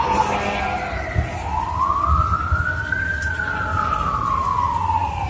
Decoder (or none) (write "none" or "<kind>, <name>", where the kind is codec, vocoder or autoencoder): none